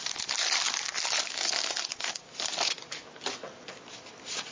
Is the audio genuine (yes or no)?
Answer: yes